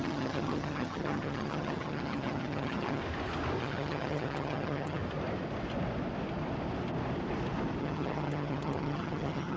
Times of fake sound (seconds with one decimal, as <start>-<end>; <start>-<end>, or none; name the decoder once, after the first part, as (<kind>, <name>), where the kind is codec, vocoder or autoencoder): 0.0-3.0 (vocoder, HiFi-GAN); 3.6-5.0; 7.8-9.6